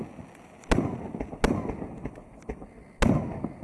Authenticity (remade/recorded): recorded